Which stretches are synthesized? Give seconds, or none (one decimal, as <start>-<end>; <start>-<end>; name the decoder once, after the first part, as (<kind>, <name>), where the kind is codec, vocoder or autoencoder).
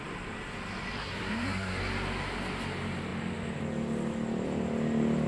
1.0-1.8 (codec, SNAC)